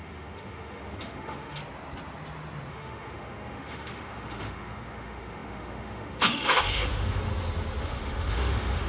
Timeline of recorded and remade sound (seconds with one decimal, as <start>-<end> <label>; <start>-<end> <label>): 0.0-1.6 remade; 1.6-2.7 recorded; 2.7-7.3 remade; 7.3-7.8 recorded; 7.8-8.9 remade